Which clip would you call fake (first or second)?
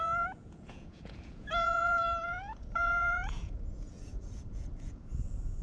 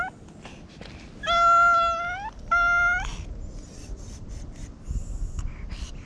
first